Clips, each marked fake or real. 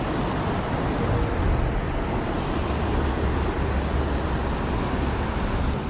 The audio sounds real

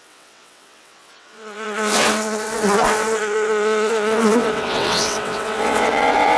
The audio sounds fake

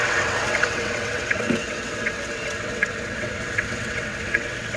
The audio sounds fake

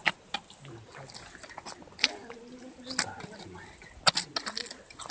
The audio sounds real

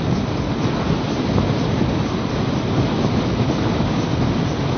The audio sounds real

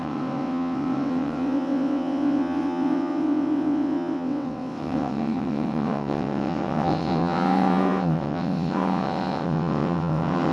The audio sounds fake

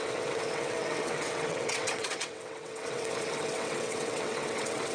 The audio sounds fake